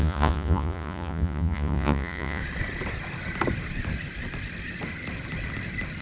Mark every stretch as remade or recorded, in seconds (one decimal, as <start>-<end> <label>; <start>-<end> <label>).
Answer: 0.0-2.4 remade; 2.4-6.0 recorded

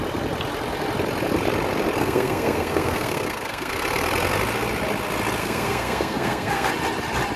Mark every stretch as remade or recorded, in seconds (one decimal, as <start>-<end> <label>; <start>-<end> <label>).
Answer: 0.0-2.0 recorded; 2.0-3.7 remade; 3.7-5.4 recorded; 5.4-6.7 remade; 6.7-7.4 recorded

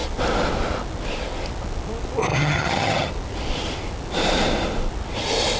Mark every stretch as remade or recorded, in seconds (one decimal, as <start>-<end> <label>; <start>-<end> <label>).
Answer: 0.0-2.3 recorded; 2.3-3.1 remade; 3.1-5.6 recorded